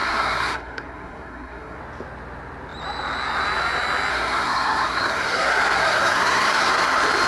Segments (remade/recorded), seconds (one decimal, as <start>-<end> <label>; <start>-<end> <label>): 0.0-1.8 remade; 1.8-4.1 recorded; 4.1-6.8 remade; 6.8-7.3 recorded